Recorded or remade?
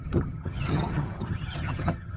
remade